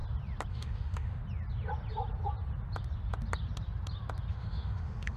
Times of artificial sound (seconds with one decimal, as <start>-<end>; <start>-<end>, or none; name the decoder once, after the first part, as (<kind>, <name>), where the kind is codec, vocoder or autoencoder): 0.5-1.2 (autoencoder, DAC-VAE); 4.3-5.2